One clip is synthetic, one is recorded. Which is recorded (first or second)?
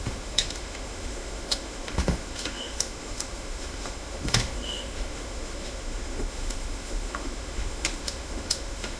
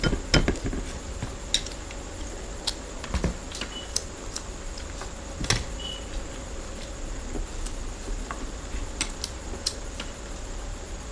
second